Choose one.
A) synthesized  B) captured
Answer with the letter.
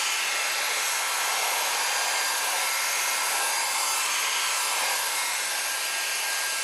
A